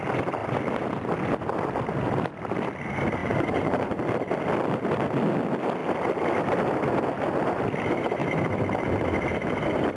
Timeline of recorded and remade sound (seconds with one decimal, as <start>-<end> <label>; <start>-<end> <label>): 0.0-3.2 recorded; 3.2-4.0 remade; 4.0-10.0 recorded